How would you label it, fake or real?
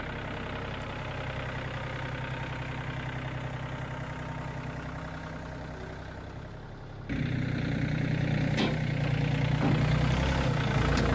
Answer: real